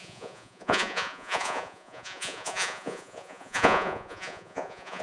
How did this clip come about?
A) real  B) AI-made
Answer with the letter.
B